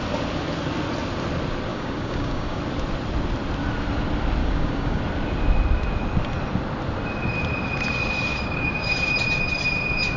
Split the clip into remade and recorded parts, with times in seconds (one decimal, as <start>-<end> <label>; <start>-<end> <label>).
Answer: 0.0-1.7 recorded; 1.7-2.6 remade; 2.6-4.4 recorded; 4.4-5.0 remade; 5.0-8.3 recorded; 8.3-9.1 remade; 9.1-10.2 recorded